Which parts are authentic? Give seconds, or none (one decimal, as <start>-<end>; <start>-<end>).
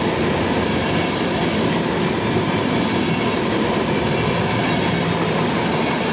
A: 0.0-6.1